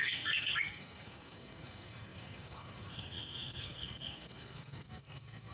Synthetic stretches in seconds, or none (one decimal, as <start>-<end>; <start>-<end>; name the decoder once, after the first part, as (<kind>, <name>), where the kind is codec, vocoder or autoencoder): 0.0-5.5 (codec, SNAC)